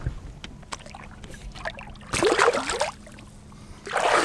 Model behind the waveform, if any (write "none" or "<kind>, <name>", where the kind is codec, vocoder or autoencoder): none